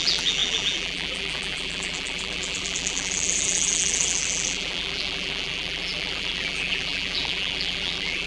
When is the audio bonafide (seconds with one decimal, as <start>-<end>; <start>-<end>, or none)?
none